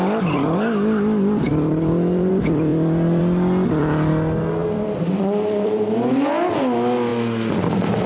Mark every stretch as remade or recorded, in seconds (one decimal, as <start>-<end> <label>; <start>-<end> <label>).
0.0-1.5 recorded; 1.5-2.3 remade; 2.3-2.7 recorded; 2.7-3.2 remade; 3.2-4.6 recorded; 4.6-5.9 remade; 5.9-8.1 recorded